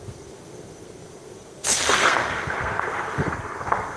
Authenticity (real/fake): fake